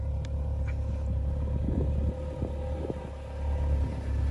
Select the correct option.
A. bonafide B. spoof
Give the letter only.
A